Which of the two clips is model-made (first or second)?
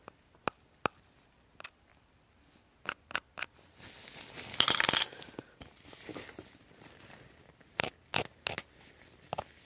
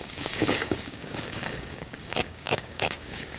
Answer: second